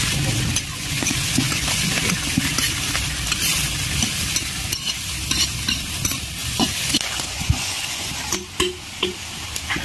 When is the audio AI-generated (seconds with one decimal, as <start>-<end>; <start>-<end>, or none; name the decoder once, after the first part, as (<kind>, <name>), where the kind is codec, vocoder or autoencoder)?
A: 0.7-1.9 (vocoder, Vocos); 6.4-8.1